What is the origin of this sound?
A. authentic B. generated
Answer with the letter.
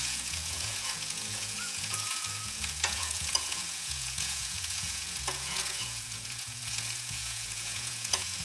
B